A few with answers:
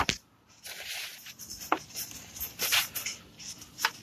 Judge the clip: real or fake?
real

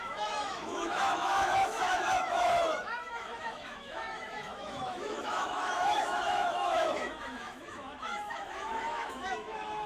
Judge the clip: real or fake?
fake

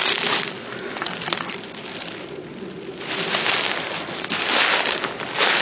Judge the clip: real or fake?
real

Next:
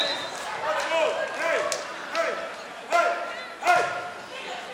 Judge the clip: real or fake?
real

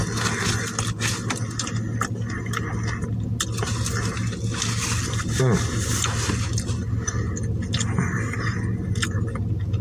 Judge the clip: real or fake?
real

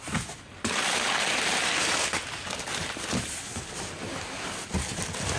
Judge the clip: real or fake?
real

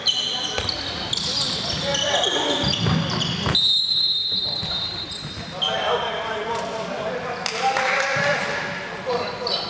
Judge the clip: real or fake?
real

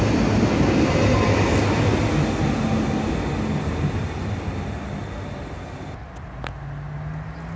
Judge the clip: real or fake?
real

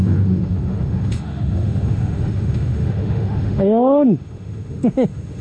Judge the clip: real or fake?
fake